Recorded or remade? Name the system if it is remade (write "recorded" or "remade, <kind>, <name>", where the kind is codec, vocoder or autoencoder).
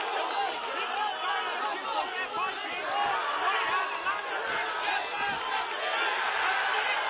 recorded